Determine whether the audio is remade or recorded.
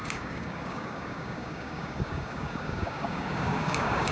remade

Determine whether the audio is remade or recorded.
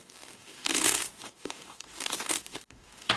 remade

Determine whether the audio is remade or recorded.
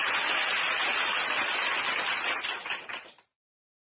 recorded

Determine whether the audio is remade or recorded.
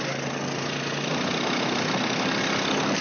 recorded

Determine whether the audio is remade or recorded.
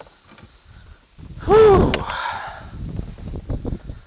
recorded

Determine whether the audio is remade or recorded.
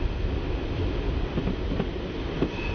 recorded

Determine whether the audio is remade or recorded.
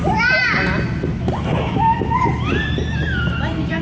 recorded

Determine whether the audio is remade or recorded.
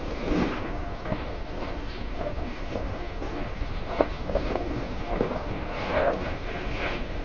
remade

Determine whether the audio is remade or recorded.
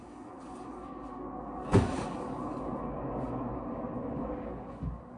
remade